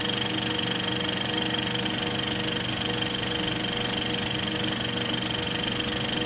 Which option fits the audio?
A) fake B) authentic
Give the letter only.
B